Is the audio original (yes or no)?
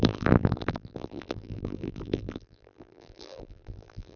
no